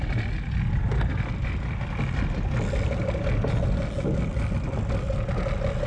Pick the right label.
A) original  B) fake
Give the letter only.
A